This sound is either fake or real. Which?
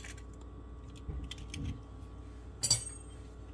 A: real